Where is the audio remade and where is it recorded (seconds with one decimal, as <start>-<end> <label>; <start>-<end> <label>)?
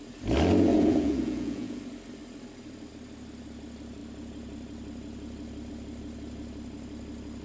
0.0-0.7 recorded; 0.7-1.8 remade; 1.8-7.4 recorded